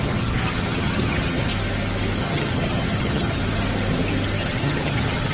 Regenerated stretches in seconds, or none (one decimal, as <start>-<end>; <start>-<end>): 0.0-1.5; 2.2-3.4; 4.4-5.3